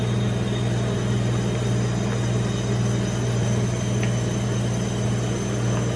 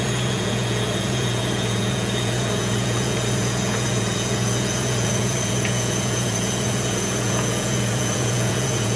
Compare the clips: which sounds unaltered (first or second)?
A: first